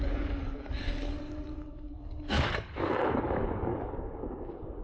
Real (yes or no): no